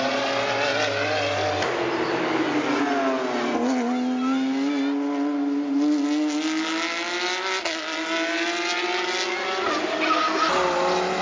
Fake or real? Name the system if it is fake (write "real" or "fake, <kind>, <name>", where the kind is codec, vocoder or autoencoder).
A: real